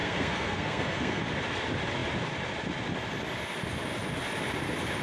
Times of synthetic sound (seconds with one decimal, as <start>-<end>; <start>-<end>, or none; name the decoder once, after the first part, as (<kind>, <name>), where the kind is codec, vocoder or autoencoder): 0.0-1.2 (codec, SNAC)